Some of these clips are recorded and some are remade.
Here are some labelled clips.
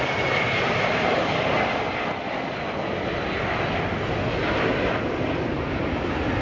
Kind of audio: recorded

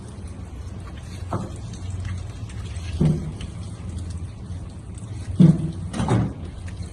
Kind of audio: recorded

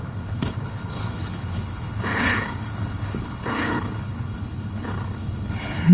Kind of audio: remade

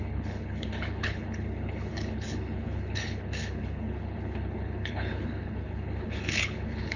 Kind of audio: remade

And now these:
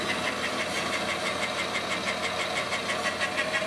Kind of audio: recorded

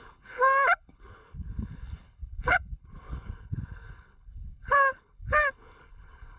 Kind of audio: remade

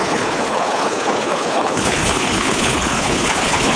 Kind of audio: remade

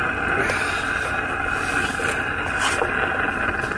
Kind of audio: recorded